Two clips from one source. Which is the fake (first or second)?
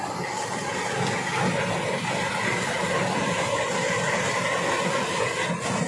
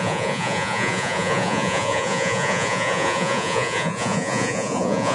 second